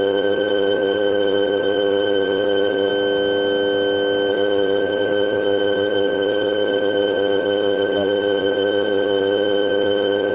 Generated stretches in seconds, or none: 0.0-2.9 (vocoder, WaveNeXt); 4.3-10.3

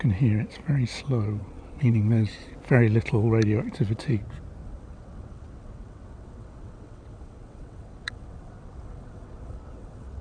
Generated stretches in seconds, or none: 1.4-2.5 (vocoder, WaveNeXt); 4.6-10.2

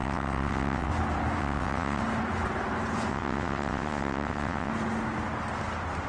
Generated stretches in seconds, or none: 0.0-0.9 (vocoder, WaveNeXt); 1.4-2.0; 3.1-4.7

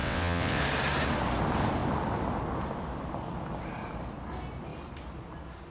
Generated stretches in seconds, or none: 0.0-0.6 (vocoder, WaveNeXt)

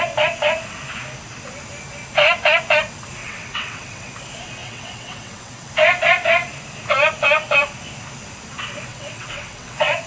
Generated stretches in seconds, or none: 3.2-4.1 (vocoder, WaveNeXt); 4.6-5.7; 8.9-10.1